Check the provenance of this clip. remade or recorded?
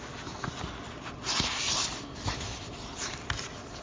recorded